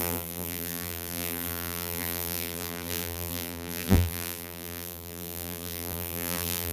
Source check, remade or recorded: remade